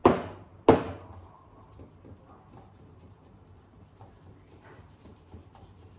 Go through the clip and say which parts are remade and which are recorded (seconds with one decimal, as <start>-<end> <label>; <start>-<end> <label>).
0.0-2.5 recorded; 2.5-6.0 remade

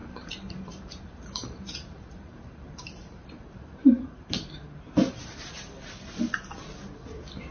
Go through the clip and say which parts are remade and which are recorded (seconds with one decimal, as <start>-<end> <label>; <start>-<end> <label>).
0.0-4.1 remade; 4.1-7.5 recorded

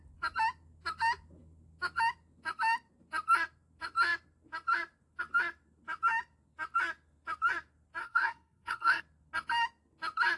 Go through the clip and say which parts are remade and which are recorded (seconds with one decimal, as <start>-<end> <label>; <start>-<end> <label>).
0.0-8.0 recorded; 8.0-9.0 remade; 9.0-10.4 recorded

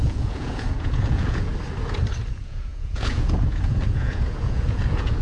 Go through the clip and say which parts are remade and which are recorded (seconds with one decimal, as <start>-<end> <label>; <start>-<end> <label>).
0.0-1.5 remade; 1.5-2.3 recorded; 2.3-5.2 remade

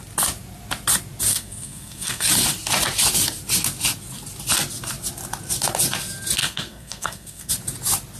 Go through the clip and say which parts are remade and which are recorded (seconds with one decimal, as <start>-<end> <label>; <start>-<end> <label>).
0.0-1.3 recorded; 1.3-2.3 remade; 2.3-6.4 recorded; 6.4-7.5 remade; 7.5-8.2 recorded

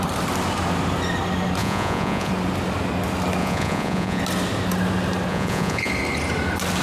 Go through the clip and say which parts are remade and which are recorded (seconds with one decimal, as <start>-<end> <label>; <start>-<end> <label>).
0.0-1.6 recorded; 1.6-2.3 remade; 2.3-3.4 recorded; 3.4-4.2 remade; 4.2-5.3 recorded; 5.3-5.9 remade; 5.9-6.8 recorded

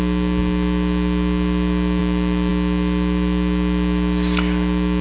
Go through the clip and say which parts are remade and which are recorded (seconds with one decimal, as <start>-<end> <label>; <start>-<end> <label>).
0.0-5.0 recorded

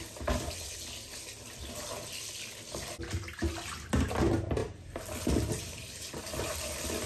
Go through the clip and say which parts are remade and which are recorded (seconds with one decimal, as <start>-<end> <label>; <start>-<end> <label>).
0.0-7.1 recorded